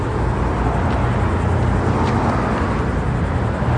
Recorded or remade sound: recorded